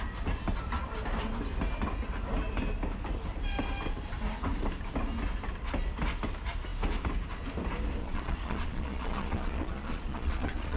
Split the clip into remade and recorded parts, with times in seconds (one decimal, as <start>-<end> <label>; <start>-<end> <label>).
0.0-8.0 recorded; 8.0-10.8 remade